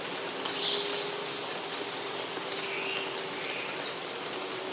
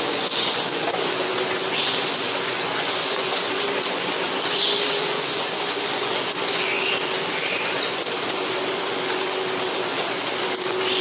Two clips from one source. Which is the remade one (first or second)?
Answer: second